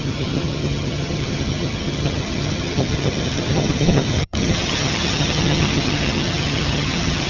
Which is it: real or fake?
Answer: fake